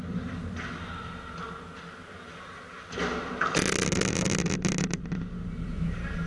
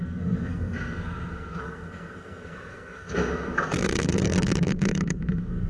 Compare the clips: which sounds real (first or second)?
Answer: first